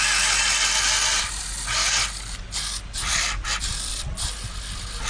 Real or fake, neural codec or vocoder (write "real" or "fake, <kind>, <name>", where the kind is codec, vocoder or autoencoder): real